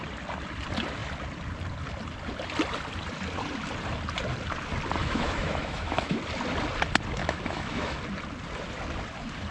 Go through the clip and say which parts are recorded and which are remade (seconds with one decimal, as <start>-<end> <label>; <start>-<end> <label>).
0.0-5.0 recorded; 5.0-6.2 remade; 6.2-7.2 recorded; 7.2-8.0 remade; 8.0-9.5 recorded